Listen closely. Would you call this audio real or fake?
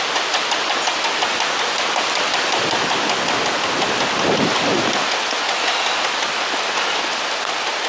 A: real